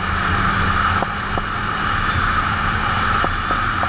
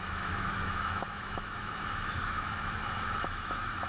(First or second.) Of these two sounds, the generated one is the second